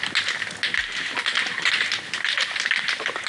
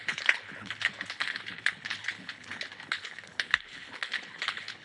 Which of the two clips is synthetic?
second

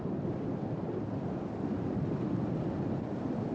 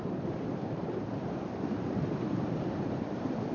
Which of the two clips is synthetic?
second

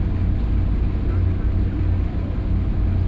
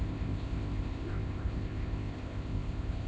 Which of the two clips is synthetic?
second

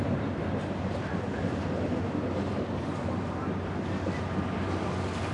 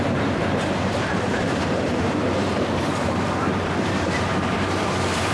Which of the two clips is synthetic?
second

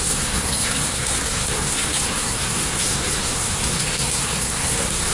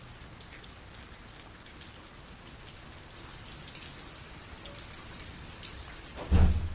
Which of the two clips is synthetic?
first